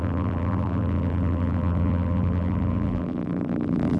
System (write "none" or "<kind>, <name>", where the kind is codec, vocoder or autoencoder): vocoder, BigVGAN v2